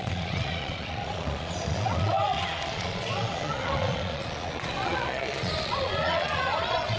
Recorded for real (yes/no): no